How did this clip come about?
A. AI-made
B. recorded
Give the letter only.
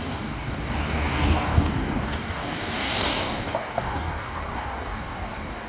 A